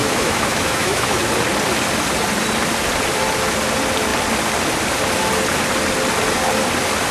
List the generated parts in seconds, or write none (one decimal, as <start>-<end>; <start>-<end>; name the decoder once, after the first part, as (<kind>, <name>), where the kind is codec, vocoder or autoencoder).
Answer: 0.0-1.2 (autoencoder, DAC-VAE)